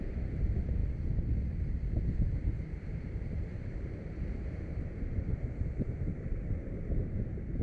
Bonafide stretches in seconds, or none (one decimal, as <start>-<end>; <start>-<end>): 0.8-2.0